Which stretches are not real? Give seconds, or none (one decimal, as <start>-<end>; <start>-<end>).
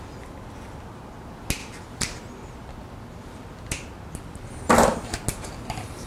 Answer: 1.6-2.3